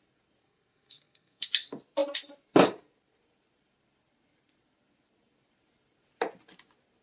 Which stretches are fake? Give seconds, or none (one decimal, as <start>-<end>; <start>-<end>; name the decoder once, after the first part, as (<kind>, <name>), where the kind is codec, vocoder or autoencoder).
0.4-1.5 (codec, SNAC)